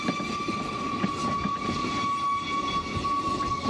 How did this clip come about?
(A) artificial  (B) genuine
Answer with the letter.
B